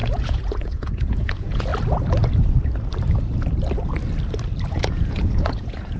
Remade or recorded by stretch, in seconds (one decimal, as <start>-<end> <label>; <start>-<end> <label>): 0.0-1.7 remade; 1.7-4.7 recorded; 4.7-6.0 remade